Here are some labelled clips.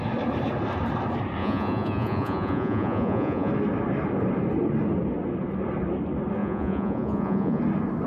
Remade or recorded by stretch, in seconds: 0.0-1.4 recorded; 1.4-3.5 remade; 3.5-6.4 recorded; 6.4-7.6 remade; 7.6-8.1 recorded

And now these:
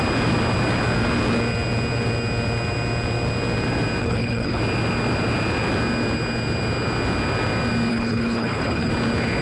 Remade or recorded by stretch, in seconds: 0.0-4.0 recorded; 4.0-4.6 remade; 4.6-7.9 recorded; 7.9-8.9 remade; 8.9-9.4 recorded